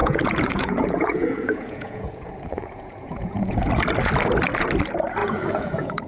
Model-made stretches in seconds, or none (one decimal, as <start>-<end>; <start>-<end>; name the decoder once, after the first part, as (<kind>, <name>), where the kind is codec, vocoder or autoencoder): 0.0-3.7 (vocoder, Vocos); 5.2-6.1